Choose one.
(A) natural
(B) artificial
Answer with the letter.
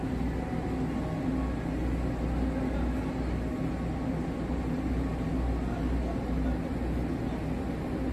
A